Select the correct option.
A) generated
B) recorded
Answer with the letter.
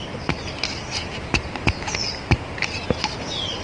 B